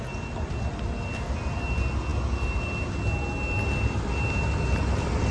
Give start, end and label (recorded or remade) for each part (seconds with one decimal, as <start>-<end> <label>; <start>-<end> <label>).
0.0-5.3 recorded